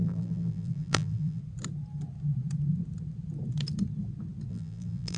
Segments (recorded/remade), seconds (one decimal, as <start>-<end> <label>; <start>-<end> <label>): 0.0-1.4 remade; 1.4-4.5 recorded; 4.5-5.2 remade